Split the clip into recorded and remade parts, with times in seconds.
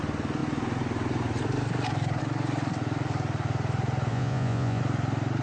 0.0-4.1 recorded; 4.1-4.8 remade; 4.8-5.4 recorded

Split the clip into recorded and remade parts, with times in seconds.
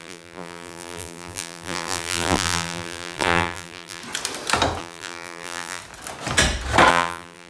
0.0-4.0 remade; 4.0-4.8 recorded; 4.8-5.8 remade; 5.8-6.9 recorded; 6.9-7.5 remade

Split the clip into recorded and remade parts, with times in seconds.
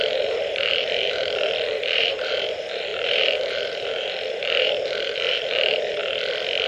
0.0-6.0 remade; 6.0-6.7 recorded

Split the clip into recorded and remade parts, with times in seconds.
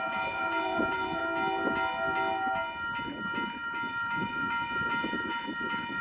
0.0-1.2 remade; 1.2-3.9 recorded; 3.9-6.0 remade